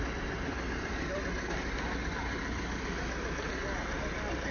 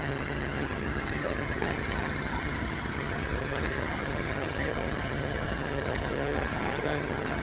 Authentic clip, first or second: first